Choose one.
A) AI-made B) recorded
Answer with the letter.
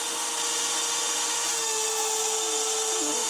B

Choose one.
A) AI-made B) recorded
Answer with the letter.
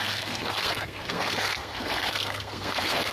A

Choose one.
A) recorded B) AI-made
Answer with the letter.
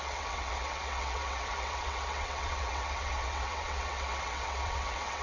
B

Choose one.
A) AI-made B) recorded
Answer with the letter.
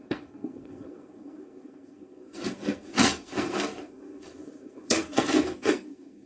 A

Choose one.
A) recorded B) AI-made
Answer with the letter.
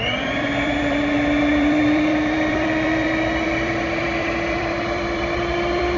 B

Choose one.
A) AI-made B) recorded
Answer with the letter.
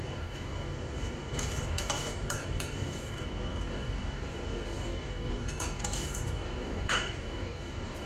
A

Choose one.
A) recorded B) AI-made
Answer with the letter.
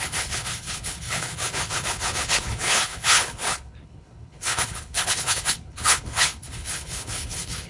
B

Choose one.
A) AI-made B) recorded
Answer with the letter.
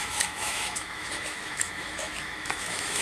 A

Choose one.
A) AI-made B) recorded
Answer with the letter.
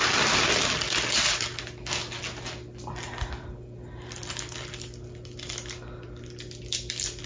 B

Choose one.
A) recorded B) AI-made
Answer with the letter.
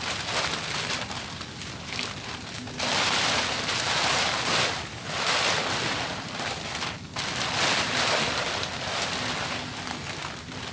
A